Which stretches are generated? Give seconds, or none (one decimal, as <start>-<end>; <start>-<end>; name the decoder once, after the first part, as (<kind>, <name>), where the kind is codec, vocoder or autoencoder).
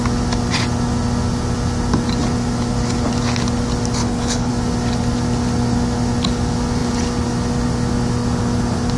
4.0-4.5 (codec, HILCodec)